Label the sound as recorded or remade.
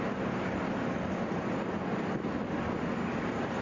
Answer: recorded